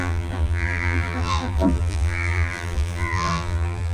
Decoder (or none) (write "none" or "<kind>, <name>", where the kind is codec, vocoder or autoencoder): vocoder, BigVGAN v2